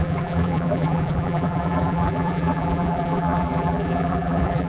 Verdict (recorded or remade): remade